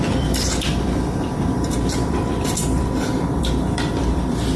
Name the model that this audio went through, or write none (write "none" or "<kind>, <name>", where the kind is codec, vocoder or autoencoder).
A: vocoder, BigVGAN v2